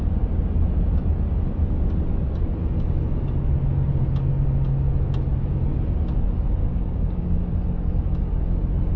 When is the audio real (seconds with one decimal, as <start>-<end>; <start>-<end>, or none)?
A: 0.0-6.6; 7.4-9.0